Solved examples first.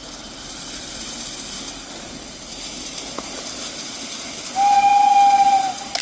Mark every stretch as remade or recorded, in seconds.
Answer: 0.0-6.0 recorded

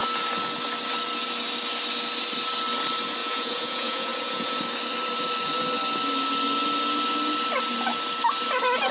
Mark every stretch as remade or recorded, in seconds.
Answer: 0.0-3.2 recorded; 3.2-4.6 remade; 4.6-8.9 recorded

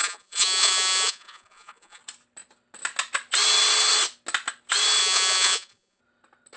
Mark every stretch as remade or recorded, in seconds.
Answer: 0.0-2.0 remade; 2.0-5.0 recorded; 5.0-6.0 remade; 6.0-6.6 recorded

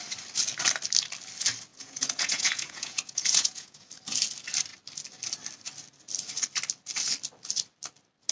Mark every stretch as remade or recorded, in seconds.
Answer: 0.0-1.7 recorded; 1.7-3.9 remade; 3.9-8.3 recorded

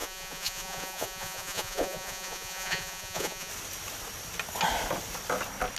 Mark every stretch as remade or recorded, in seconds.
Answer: 0.0-3.5 remade; 3.5-5.8 recorded

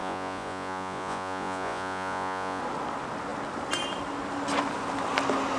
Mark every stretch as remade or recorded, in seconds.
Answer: 0.0-2.6 remade; 2.6-5.6 recorded

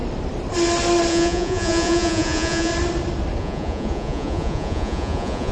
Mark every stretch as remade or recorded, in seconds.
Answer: 0.0-1.1 recorded; 1.1-2.7 remade; 2.7-3.4 recorded; 3.4-5.5 remade

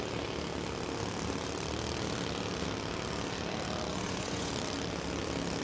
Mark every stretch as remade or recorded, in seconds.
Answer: 0.0-3.9 recorded; 3.9-4.5 remade; 4.5-5.6 recorded